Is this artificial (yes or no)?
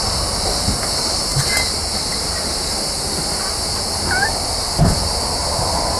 no